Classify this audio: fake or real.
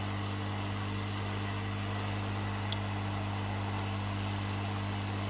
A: real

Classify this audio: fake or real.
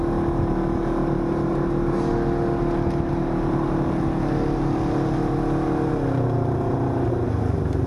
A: real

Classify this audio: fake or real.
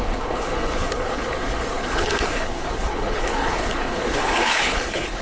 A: fake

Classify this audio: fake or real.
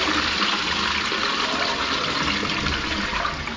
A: real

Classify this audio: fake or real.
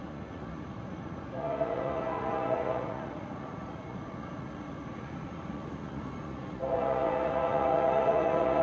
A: fake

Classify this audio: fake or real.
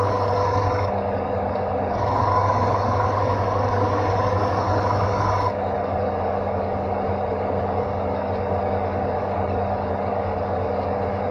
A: fake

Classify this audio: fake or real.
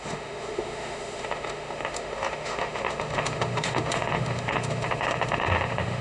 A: fake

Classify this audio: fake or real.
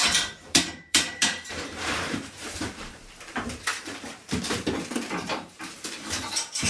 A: fake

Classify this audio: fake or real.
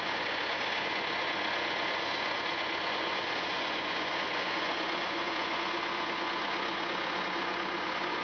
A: fake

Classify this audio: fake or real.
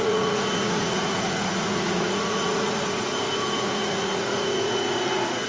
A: fake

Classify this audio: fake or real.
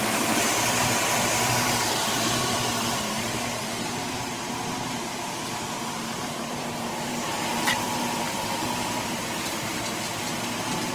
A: fake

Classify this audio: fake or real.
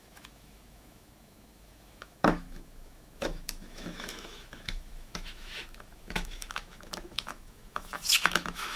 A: fake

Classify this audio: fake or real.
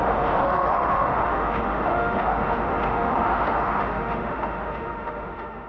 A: fake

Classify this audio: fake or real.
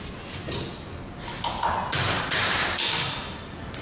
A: real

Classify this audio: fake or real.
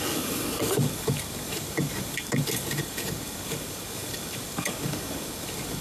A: fake